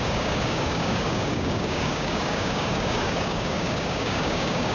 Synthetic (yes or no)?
yes